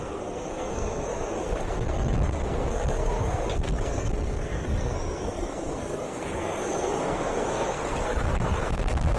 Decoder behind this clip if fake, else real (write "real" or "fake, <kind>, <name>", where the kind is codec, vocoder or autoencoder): fake, codec, SNAC